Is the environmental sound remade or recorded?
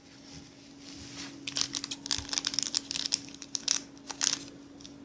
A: recorded